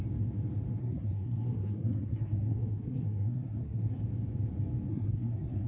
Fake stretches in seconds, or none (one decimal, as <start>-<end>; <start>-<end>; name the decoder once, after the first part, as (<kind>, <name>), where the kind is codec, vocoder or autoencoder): 0.8-3.8 (codec, SNAC); 4.9-5.7